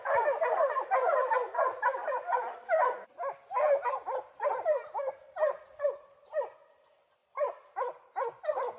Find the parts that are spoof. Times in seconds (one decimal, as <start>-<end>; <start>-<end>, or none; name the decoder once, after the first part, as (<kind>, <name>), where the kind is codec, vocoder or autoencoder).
none